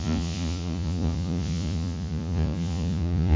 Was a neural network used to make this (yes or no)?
yes